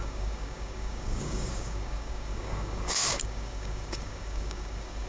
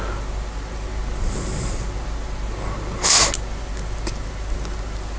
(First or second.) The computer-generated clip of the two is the first